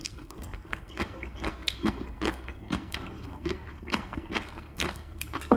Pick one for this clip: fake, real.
fake